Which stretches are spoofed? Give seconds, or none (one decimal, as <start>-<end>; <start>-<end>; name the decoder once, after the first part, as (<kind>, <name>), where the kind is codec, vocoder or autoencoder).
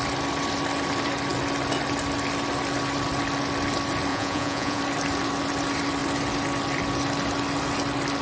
4.1-4.8 (vocoder, Vocos)